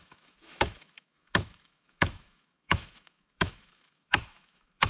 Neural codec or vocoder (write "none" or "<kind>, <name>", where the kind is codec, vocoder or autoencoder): autoencoder, DAC-VAE